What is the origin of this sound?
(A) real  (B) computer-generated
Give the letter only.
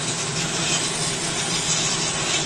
A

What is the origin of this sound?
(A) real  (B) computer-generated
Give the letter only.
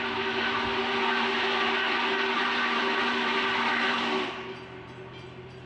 A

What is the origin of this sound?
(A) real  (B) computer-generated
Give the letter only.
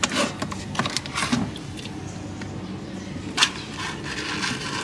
A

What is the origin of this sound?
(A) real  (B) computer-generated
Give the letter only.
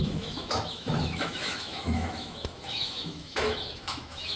B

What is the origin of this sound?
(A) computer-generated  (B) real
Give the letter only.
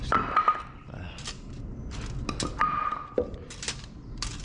B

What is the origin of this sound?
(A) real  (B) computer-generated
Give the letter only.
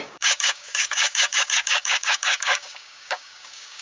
B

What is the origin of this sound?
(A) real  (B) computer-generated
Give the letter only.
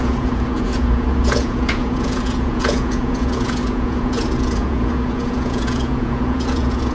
B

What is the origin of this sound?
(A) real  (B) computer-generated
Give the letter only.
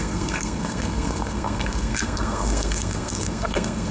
B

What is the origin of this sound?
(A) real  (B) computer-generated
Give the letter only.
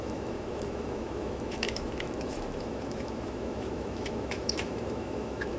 B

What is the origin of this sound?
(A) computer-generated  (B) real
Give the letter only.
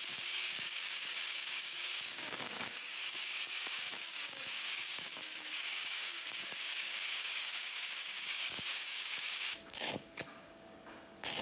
A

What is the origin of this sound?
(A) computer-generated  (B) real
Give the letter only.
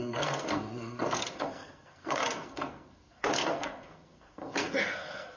A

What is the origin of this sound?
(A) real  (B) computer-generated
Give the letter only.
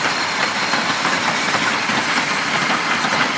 B